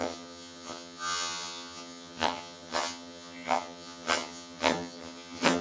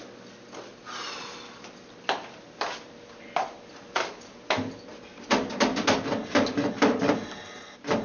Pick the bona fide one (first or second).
second